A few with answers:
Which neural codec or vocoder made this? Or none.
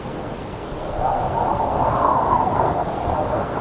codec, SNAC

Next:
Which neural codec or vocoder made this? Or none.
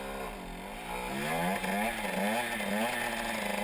none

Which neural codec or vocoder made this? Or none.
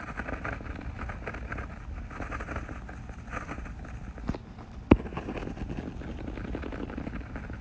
none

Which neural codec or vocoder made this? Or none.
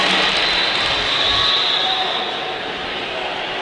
none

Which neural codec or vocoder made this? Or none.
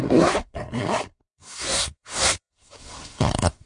codec, SNAC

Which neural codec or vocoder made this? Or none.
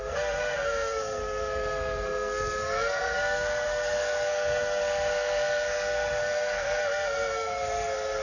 codec, SNAC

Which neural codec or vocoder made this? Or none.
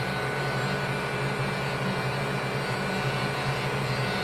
none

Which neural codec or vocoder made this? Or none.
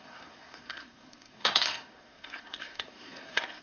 codec, SNAC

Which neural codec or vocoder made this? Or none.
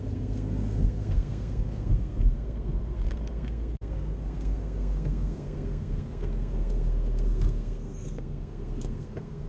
codec, SNAC